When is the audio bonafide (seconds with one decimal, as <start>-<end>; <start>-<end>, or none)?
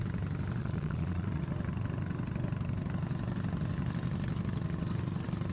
0.0-0.6; 1.4-5.5